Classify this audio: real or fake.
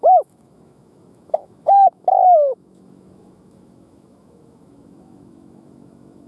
fake